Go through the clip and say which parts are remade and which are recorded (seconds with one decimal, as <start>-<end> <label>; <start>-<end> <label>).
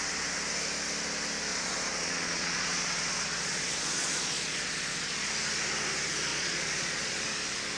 0.0-1.5 recorded; 1.5-5.3 remade; 5.3-6.3 recorded; 6.3-7.2 remade; 7.2-7.8 recorded